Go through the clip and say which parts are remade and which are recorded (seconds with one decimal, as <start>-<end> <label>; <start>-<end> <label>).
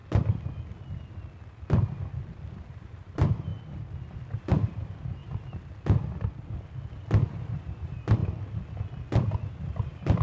0.0-2.7 recorded; 2.7-3.5 remade; 3.5-4.3 recorded; 4.3-5.2 remade; 5.2-7.4 recorded; 7.4-8.2 remade; 8.2-9.5 recorded; 9.5-10.2 remade